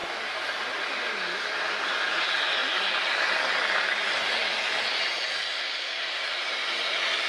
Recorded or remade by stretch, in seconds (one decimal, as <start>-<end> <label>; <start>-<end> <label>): 0.0-7.3 recorded